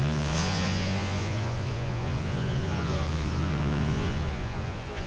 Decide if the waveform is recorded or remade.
remade